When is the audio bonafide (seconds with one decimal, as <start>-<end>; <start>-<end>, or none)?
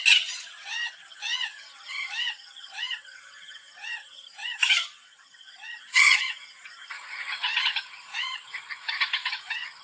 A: none